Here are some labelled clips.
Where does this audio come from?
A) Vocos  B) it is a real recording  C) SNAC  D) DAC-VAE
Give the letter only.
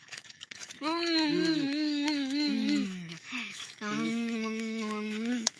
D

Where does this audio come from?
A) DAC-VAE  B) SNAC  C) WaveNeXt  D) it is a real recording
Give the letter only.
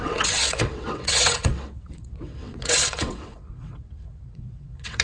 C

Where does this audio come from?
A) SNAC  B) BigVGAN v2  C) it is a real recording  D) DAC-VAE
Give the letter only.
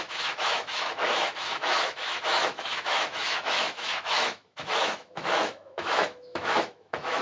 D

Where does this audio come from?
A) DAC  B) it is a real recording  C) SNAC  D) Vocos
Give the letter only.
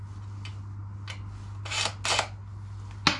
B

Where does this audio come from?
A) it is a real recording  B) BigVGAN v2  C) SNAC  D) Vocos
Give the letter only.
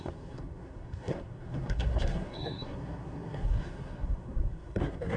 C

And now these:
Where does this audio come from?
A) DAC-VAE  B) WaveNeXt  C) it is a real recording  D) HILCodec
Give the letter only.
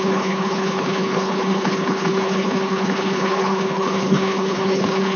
D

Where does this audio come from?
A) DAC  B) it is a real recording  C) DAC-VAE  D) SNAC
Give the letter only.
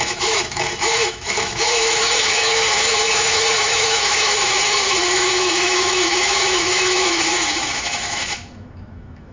C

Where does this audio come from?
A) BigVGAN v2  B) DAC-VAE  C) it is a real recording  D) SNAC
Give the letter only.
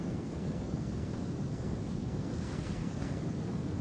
D